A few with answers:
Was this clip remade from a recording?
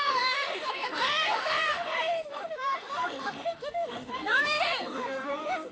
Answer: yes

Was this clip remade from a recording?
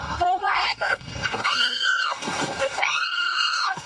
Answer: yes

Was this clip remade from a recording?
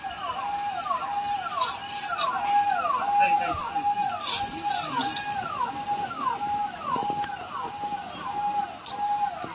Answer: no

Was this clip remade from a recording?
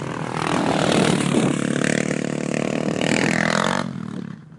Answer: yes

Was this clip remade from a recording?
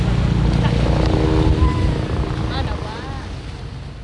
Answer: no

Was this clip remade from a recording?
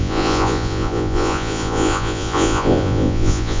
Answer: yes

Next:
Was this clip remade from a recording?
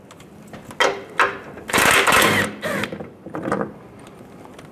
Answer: no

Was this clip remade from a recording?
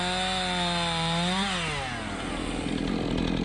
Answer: no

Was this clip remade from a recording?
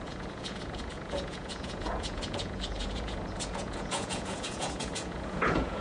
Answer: yes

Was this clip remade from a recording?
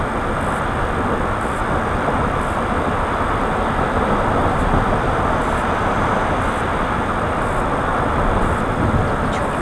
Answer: yes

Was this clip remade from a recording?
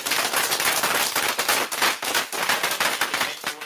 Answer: no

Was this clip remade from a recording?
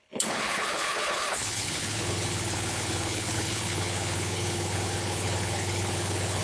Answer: yes